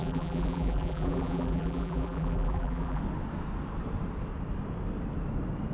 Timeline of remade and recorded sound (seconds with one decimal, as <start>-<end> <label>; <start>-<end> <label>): 0.0-3.0 remade; 3.0-5.7 recorded